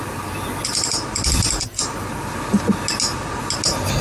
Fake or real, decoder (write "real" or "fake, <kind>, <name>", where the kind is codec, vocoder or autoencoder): real